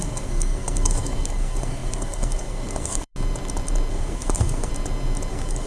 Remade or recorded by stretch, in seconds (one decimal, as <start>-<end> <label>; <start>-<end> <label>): 0.0-3.1 remade; 3.1-3.9 recorded; 3.9-4.7 remade; 4.7-5.3 recorded; 5.3-5.7 remade